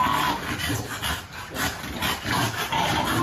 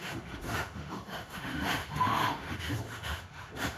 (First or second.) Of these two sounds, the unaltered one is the first